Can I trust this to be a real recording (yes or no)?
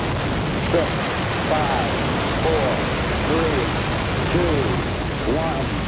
yes